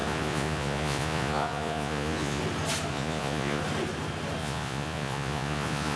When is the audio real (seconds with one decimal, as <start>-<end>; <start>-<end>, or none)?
2.4-2.9; 3.6-4.4